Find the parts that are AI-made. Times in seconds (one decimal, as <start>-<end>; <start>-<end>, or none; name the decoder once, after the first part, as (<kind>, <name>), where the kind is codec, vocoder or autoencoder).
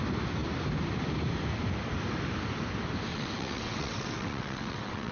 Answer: 3.1-5.1 (vocoder, WaveNeXt)